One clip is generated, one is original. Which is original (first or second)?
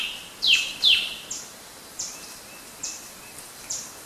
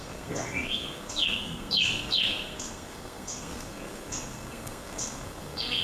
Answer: first